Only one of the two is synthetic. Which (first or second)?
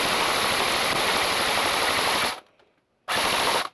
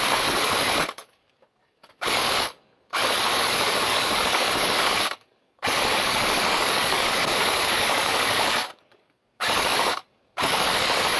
second